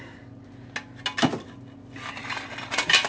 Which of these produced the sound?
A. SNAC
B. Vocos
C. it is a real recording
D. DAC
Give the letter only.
C